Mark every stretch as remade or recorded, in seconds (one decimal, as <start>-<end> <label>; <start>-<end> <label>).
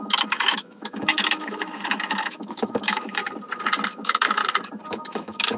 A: 0.0-3.2 remade; 3.2-3.9 recorded; 3.9-4.4 remade; 4.4-4.9 recorded; 4.9-5.6 remade